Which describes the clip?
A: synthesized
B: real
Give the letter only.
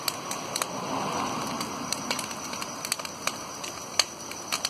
B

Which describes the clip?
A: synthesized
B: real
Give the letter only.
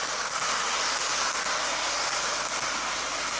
B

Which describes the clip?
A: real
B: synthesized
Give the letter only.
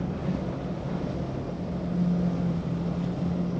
A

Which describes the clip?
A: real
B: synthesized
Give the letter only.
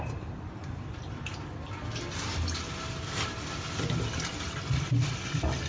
A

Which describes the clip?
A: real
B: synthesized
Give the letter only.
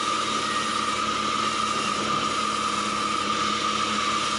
A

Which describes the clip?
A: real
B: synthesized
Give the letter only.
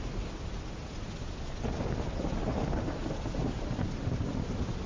A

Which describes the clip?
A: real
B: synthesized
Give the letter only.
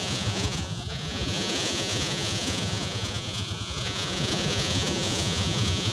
B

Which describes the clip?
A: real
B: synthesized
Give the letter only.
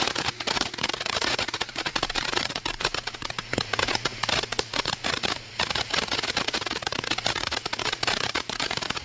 B